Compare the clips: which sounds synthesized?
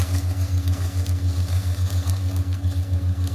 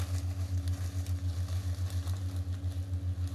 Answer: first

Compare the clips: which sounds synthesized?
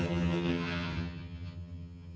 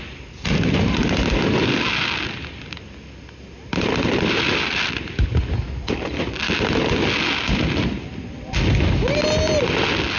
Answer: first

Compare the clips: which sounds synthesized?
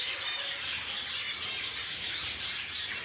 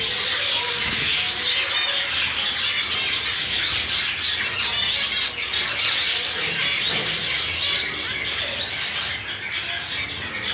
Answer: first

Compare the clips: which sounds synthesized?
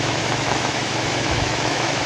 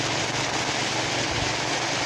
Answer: first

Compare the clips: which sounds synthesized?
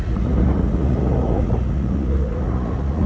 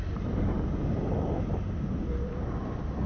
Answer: first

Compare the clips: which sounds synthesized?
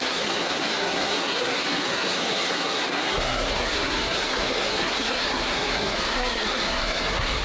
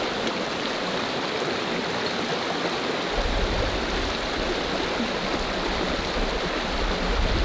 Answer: first